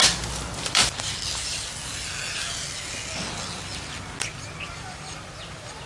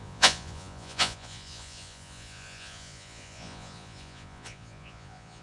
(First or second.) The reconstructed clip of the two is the second